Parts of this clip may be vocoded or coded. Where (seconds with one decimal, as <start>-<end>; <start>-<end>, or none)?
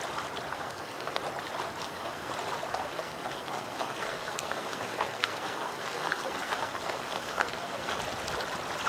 0.5-1.2; 1.8-2.3; 2.7-8.0